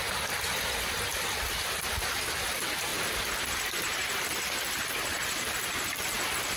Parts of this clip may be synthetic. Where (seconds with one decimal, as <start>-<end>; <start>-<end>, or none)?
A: none